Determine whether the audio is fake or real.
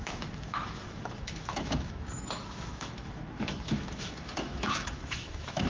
fake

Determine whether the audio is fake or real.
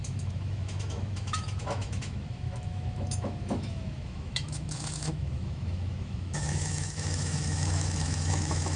fake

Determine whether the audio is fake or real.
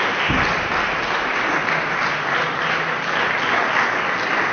real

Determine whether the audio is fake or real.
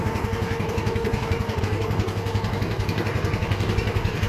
fake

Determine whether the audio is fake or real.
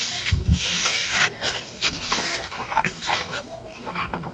fake